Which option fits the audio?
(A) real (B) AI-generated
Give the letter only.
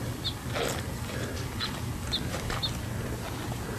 A